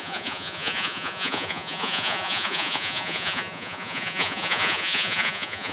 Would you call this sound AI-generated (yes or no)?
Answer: yes